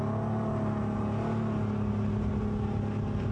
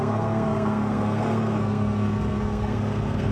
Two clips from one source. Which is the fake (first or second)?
second